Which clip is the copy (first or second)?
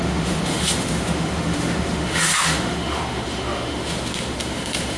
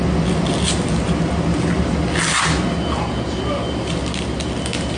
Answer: first